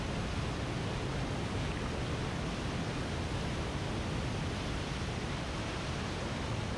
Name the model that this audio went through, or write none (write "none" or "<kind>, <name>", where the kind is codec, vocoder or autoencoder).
none